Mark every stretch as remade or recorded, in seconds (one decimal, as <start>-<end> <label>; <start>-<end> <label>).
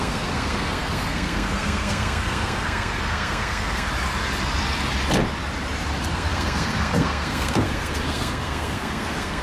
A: 0.0-3.9 remade; 3.9-6.1 recorded; 6.1-9.4 remade